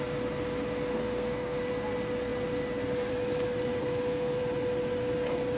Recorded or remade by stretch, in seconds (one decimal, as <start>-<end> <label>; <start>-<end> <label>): 0.0-0.9 recorded; 0.9-1.7 remade; 1.7-3.8 recorded; 3.8-4.4 remade; 4.4-5.6 recorded